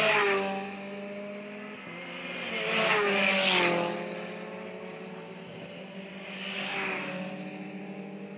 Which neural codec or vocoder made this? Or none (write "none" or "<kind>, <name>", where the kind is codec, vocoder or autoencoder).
none